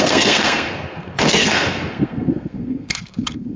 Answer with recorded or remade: remade